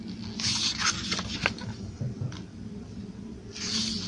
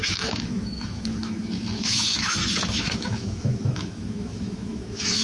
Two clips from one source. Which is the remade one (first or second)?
second